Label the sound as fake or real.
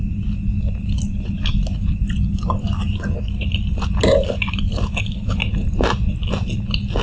real